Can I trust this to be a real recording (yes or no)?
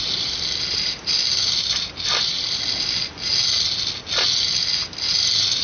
yes